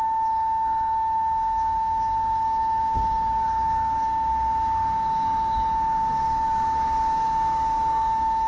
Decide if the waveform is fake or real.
fake